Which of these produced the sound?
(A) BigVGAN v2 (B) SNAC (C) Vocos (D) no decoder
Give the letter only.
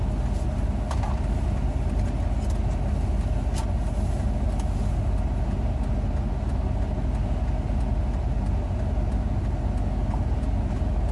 D